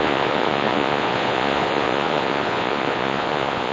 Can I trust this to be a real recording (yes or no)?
no